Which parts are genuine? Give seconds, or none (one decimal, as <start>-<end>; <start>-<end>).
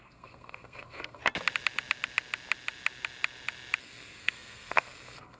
1.2-3.8